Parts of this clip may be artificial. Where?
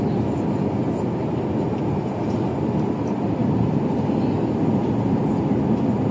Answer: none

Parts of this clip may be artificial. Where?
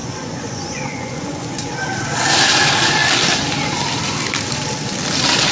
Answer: 0.0-1.7 (vocoder, Vocos)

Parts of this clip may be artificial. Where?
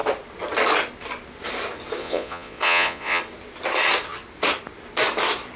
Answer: 2.0-3.2 (vocoder, Vocos)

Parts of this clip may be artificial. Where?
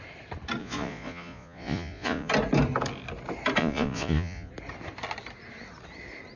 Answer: 0.6-2.3 (vocoder, Vocos); 3.6-4.5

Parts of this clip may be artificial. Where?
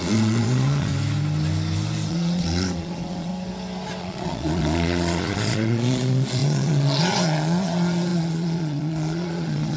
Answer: 0.0-0.9 (vocoder, Vocos); 2.1-3.3; 4.0-9.8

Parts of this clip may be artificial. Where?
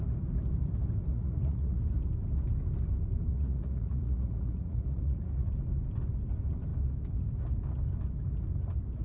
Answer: 1.1-1.8 (vocoder, Vocos); 3.3-5.5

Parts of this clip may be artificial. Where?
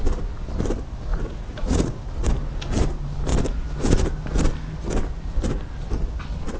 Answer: 1.1-2.0 (vocoder, Vocos)